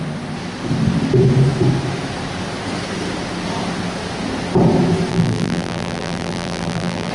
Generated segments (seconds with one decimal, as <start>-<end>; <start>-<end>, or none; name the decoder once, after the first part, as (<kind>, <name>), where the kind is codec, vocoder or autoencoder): 5.1-7.1 (vocoder, BigVGAN v2)